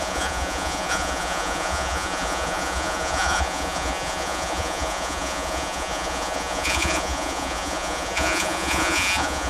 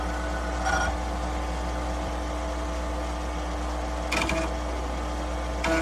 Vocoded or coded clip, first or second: first